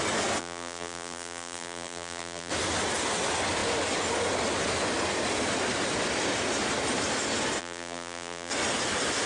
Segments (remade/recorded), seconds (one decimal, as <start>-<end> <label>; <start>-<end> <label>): 0.0-0.4 recorded; 0.4-2.5 remade; 2.5-7.6 recorded; 7.6-8.5 remade; 8.5-9.3 recorded